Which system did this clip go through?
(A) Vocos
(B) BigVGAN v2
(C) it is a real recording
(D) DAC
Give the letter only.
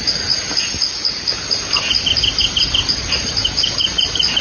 C